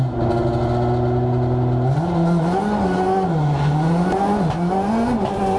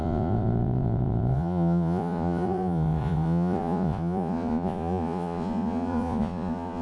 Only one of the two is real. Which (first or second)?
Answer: first